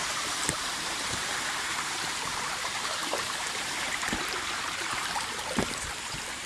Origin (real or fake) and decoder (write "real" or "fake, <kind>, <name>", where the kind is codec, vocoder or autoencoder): fake, vocoder, BigVGAN v2